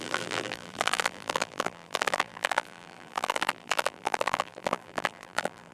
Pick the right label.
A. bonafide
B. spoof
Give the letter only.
B